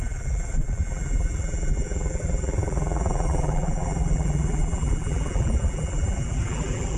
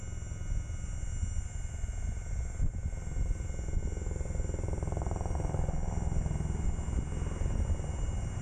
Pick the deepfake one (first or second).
first